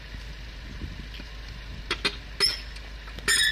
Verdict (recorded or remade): recorded